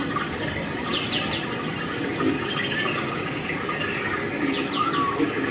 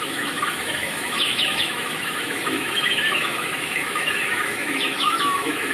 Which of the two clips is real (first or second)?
first